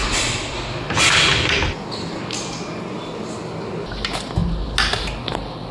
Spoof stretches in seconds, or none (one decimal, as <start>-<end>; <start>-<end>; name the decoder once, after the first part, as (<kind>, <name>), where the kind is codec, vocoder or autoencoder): none